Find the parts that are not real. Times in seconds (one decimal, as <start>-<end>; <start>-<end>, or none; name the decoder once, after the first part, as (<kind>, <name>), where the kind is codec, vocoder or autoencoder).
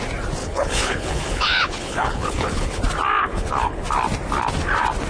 0.4-2.8 (codec, HILCodec); 3.2-3.8